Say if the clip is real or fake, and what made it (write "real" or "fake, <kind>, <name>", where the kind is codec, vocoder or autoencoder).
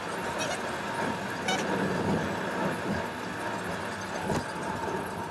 real